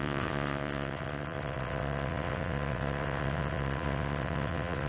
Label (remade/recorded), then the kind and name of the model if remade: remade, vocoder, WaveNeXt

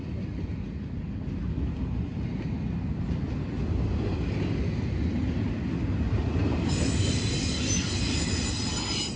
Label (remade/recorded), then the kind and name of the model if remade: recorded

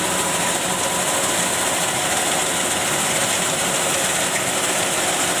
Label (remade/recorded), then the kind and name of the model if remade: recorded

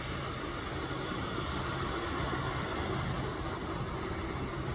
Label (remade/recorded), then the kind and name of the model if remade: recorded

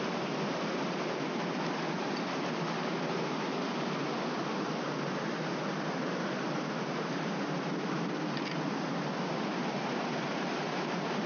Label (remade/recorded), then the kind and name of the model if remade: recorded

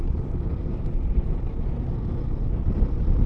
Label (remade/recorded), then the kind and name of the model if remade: recorded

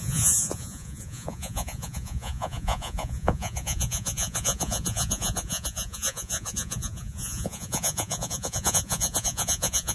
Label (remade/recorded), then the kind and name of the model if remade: remade, vocoder, Vocos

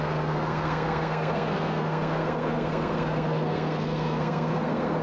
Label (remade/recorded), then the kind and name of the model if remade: remade, codec, SNAC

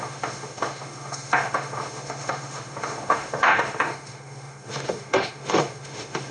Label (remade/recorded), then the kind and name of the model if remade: remade, autoencoder, DAC-VAE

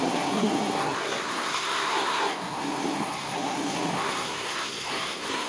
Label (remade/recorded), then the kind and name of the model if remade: remade, codec, SNAC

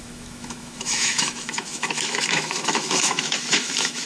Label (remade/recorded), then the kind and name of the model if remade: remade, autoencoder, DAC-VAE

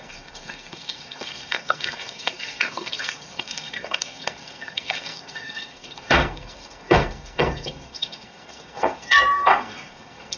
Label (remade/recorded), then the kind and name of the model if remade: remade, codec, SNAC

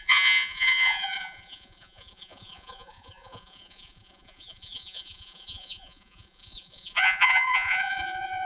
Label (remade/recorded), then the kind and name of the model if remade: remade, vocoder, Vocos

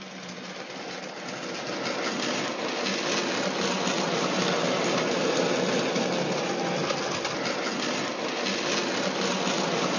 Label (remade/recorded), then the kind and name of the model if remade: recorded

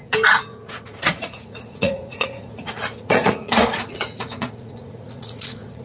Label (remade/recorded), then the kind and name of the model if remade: remade, vocoder, Vocos